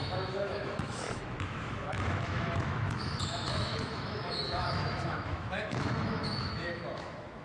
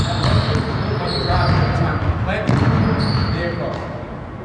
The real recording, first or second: second